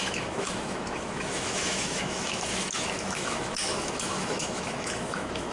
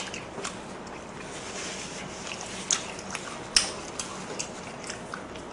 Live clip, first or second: second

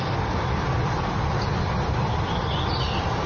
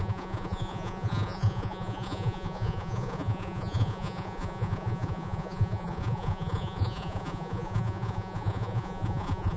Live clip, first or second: first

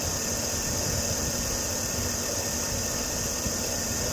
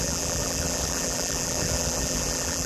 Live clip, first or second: first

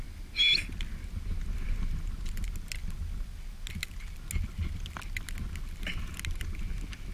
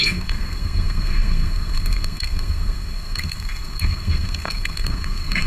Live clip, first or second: first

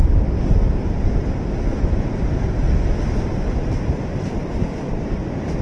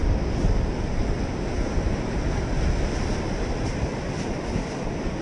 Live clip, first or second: second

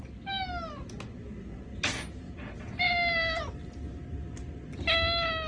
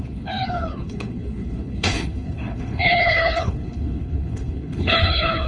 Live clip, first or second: first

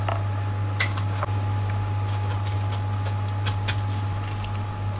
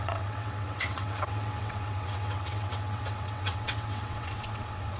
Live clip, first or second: first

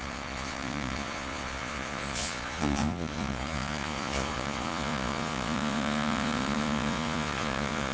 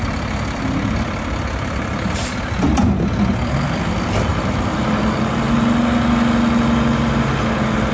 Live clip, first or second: second